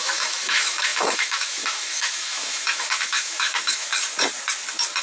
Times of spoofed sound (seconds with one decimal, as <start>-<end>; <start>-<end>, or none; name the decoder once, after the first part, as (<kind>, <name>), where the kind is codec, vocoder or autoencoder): 0.0-3.9 (autoencoder, DAC-VAE)